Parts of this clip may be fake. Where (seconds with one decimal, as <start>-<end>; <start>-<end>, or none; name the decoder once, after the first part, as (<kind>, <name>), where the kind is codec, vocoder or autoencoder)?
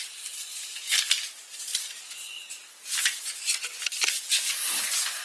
none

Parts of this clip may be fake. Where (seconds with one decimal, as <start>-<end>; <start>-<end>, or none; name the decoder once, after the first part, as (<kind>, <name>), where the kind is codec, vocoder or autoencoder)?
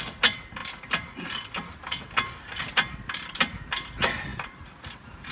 none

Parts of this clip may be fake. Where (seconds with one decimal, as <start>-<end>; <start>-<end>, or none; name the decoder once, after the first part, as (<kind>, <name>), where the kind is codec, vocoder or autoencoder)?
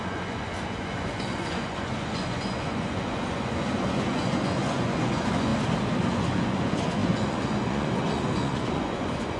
0.0-5.5 (vocoder, Vocos); 6.1-9.4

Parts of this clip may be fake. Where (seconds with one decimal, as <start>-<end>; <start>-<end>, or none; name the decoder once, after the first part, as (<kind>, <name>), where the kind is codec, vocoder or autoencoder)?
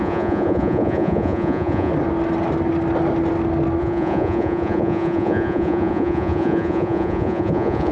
0.0-1.9 (vocoder, Vocos); 3.8-7.9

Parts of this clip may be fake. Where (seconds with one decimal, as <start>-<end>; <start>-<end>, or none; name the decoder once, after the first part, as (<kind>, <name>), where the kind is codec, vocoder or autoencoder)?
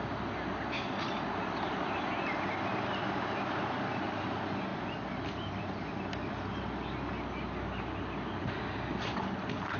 none